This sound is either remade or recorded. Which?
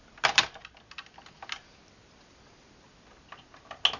recorded